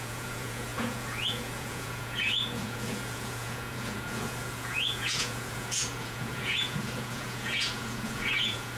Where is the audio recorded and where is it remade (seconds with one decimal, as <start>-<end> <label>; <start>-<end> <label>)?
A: 0.0-8.8 remade